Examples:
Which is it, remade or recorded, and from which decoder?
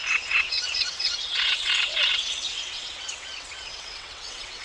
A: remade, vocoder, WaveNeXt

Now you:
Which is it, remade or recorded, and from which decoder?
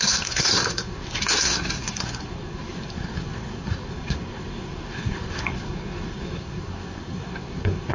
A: remade, codec, SNAC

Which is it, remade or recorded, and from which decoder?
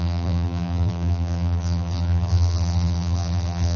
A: remade, vocoder, BigVGAN v2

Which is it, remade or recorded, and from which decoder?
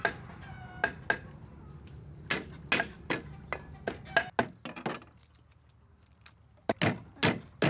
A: recorded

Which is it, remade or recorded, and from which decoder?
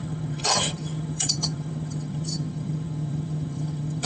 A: remade, vocoder, HiFi-GAN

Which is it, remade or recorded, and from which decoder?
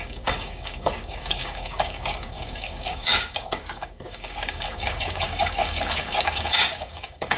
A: remade, codec, DAC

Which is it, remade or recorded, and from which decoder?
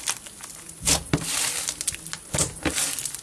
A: recorded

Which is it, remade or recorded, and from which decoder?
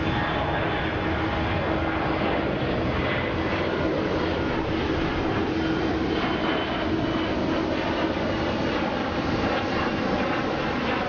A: recorded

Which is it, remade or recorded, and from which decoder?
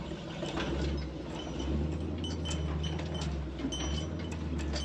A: recorded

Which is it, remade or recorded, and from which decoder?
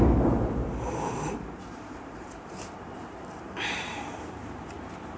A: remade, vocoder, BigVGAN v2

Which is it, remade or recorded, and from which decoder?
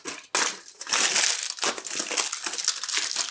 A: recorded